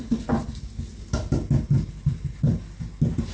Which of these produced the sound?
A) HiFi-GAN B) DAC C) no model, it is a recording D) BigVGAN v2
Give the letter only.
C